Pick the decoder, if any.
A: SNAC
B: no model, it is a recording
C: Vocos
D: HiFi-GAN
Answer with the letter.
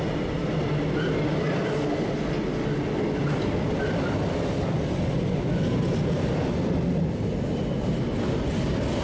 B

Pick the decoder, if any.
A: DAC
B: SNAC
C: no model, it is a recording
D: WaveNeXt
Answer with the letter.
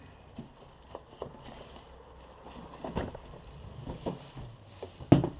C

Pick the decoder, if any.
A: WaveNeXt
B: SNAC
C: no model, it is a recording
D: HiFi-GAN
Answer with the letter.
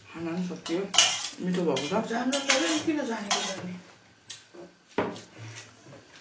C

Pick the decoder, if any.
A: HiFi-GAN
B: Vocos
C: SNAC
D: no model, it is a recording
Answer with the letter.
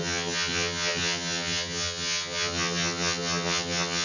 A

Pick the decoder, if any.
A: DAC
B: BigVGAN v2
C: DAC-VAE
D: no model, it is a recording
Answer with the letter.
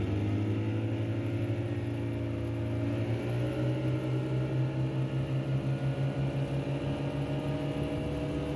D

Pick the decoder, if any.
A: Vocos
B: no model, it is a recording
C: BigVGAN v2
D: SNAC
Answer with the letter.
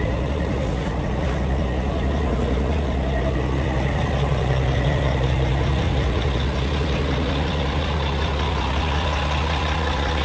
A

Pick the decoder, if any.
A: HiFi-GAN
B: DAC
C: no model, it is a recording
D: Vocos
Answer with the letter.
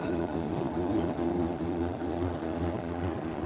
D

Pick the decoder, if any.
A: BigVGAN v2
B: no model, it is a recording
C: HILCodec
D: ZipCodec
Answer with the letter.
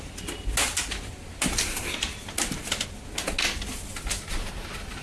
B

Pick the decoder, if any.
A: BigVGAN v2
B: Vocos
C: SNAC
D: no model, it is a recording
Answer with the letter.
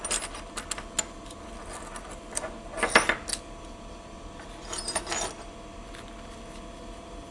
D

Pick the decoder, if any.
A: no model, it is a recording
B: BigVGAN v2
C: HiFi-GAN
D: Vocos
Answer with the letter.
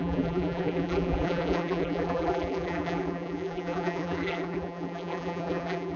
B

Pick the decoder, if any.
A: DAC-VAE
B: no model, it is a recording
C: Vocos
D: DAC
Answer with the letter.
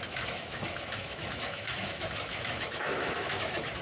A